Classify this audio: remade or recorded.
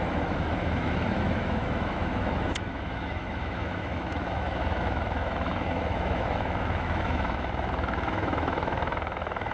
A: remade